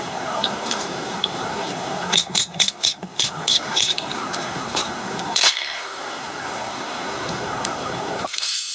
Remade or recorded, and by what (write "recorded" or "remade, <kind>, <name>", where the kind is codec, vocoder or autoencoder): remade, codec, SNAC